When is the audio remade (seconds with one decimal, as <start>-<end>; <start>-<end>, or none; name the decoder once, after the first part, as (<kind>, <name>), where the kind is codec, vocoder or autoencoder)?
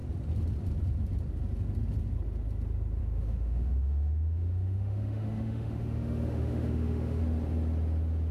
3.0-7.2 (autoencoder, DAC-VAE)